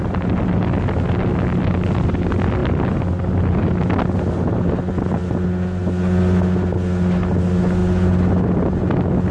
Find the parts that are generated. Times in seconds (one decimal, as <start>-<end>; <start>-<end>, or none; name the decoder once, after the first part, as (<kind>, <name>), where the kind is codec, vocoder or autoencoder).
none